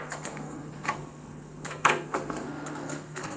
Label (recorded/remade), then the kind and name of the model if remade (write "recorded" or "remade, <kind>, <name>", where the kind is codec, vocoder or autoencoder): remade, codec, SNAC